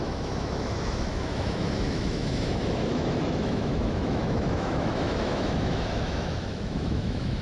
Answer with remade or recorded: remade